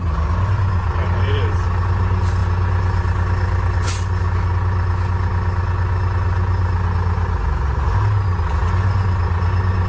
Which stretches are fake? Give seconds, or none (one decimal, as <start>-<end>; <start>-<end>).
none